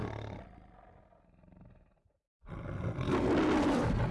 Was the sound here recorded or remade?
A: recorded